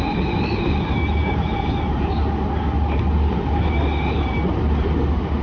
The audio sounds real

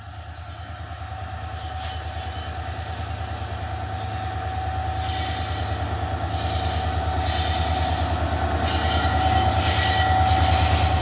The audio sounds real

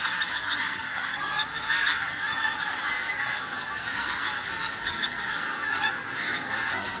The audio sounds fake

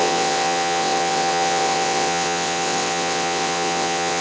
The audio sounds fake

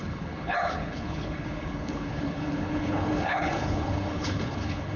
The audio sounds fake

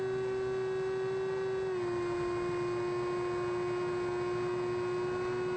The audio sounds real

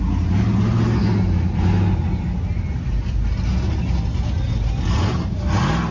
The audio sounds real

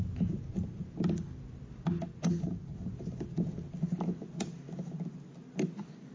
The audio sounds real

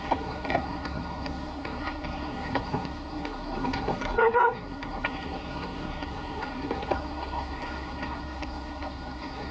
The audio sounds fake